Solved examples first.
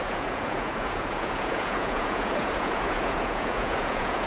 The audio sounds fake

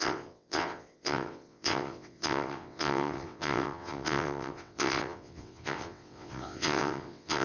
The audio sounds fake